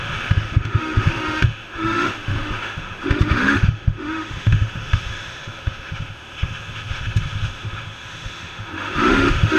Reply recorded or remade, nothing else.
remade